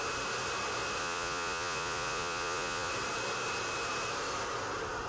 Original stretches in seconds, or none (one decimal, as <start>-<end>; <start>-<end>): 0.0-1.0; 2.9-5.1